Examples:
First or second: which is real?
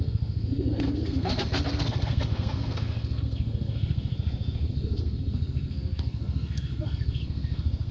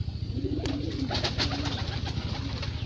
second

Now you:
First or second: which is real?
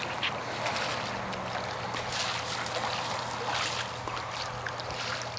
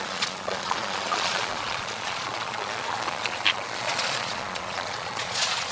first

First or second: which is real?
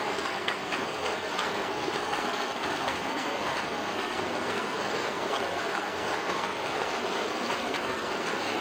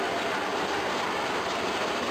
second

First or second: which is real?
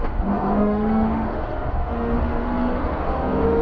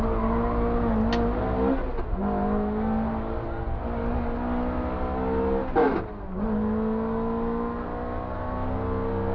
second